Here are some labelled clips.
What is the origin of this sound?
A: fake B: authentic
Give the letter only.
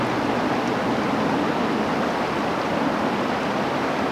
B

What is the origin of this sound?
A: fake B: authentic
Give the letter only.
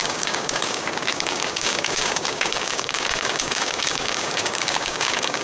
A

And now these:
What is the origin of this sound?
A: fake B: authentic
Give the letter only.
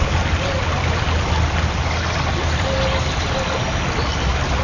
B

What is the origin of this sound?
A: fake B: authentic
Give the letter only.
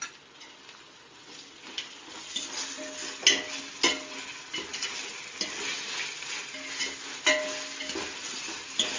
B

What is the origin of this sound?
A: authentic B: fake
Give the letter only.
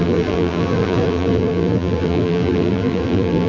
B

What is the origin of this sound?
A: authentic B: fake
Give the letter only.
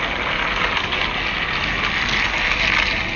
A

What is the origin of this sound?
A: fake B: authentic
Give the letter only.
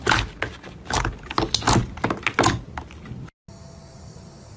B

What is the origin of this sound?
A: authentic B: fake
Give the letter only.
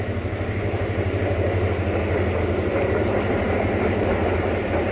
A